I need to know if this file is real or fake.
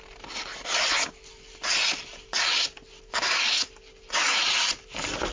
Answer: real